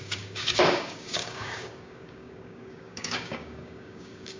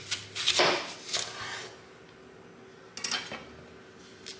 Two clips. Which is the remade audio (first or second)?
first